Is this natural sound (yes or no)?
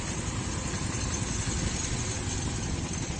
yes